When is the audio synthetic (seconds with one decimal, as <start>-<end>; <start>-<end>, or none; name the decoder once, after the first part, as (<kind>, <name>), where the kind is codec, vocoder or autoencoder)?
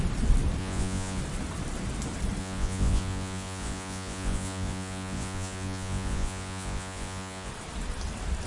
0.6-1.2 (vocoder, Vocos); 2.4-7.5